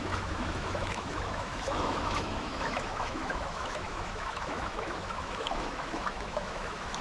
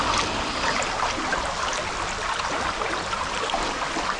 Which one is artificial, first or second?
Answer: first